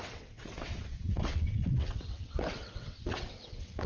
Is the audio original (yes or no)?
no